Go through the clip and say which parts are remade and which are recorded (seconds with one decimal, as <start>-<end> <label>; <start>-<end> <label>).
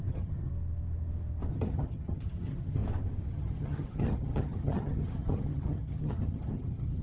0.0-0.5 remade; 0.5-1.5 recorded; 1.5-2.8 remade; 2.8-3.3 recorded; 3.3-7.0 remade